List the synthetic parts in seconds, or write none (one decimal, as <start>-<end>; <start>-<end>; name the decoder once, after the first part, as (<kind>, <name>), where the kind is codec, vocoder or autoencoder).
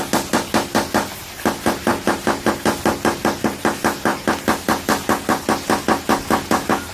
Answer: 1.9-2.5 (vocoder, BigVGAN v2)